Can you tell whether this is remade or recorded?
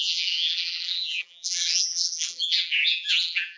remade